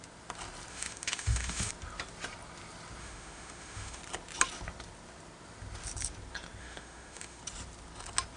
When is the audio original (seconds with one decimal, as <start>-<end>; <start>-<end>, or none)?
0.0-0.7; 1.7-3.0; 4.0-6.6; 7.4-8.4